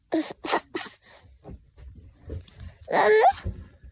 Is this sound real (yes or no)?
yes